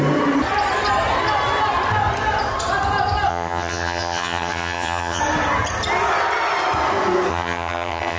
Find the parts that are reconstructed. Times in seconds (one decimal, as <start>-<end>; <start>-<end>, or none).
3.3-5.2; 7.3-8.2